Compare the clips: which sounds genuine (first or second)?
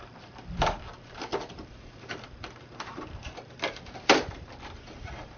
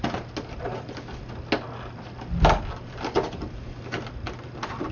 second